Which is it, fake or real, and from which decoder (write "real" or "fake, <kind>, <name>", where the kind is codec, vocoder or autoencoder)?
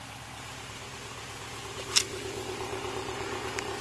fake, vocoder, BigVGAN v2